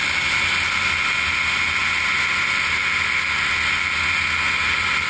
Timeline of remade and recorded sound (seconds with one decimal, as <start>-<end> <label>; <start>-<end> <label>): 0.0-5.1 recorded